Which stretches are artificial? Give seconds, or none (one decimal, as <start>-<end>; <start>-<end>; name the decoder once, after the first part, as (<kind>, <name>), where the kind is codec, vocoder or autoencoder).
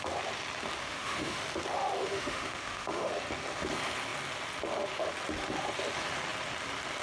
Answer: 0.8-1.4 (autoencoder, DAC-VAE); 2.0-3.1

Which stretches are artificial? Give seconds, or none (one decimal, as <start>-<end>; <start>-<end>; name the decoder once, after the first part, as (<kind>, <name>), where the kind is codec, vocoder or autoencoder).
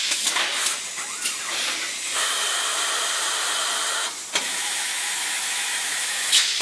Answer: 0.0-0.5 (autoencoder, DAC-VAE); 4.5-6.6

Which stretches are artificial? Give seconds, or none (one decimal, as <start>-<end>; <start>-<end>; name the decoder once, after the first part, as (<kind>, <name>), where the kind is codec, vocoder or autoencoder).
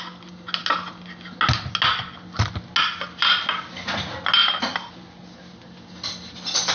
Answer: none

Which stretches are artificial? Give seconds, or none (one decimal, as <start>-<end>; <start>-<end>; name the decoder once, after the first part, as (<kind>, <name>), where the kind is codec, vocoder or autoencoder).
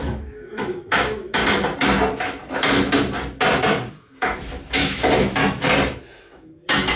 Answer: 0.0-1.4 (autoencoder, DAC-VAE); 3.9-5.4; 6.0-7.0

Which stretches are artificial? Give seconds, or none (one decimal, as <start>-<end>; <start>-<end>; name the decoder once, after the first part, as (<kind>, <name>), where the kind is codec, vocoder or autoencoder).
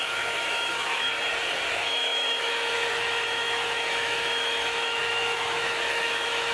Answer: 0.0-1.1 (autoencoder, DAC-VAE); 1.7-6.5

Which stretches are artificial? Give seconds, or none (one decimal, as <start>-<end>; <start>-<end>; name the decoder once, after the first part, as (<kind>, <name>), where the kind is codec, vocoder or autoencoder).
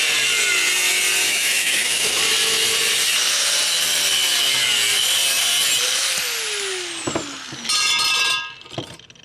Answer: 1.3-2.2 (autoencoder, DAC-VAE)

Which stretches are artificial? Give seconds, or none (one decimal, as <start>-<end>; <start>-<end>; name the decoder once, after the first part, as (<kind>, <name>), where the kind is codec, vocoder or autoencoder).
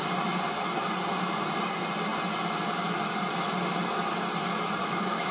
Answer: 4.8-5.3 (autoencoder, DAC-VAE)